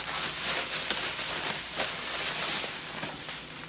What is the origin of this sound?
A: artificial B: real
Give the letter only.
B